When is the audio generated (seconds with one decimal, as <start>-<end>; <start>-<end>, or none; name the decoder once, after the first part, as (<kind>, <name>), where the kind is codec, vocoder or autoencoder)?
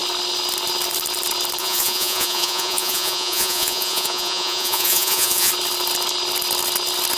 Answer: 1.6-5.5 (vocoder, Vocos)